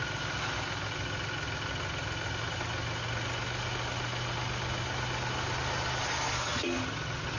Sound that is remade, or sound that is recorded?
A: recorded